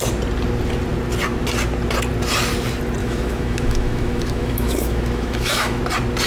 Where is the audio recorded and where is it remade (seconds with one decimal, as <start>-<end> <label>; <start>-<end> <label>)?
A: 0.0-3.0 recorded; 3.0-5.8 remade; 5.8-6.3 recorded